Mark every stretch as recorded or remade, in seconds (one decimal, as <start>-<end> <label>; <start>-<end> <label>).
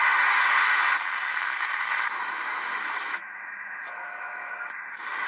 0.0-1.3 recorded; 1.3-4.5 remade; 4.5-5.3 recorded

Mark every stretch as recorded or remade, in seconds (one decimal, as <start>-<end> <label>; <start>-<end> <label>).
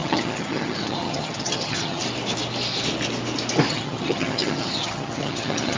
0.0-2.0 remade; 2.0-3.7 recorded; 3.7-5.8 remade